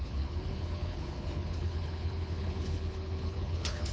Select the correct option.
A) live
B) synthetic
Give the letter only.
B